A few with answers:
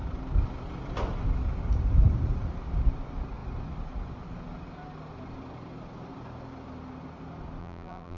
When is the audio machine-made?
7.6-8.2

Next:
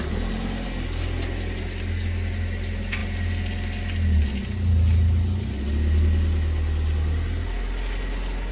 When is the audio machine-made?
none

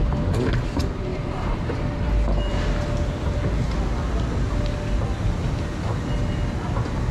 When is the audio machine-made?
1.1-1.7

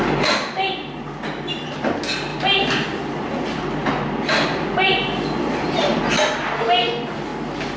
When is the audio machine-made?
2.3-6.0